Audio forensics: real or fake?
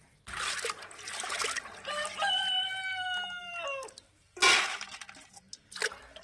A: real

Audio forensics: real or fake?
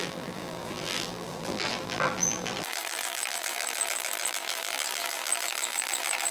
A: fake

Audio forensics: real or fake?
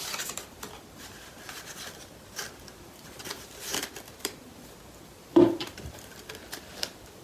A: fake